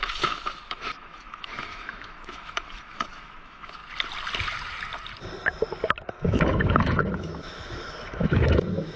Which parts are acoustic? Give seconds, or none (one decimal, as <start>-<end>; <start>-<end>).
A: 3.8-6.1